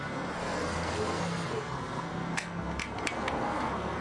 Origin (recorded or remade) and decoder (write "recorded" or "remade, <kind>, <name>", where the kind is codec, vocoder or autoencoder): remade, codec, SNAC